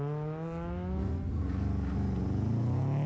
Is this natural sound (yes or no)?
yes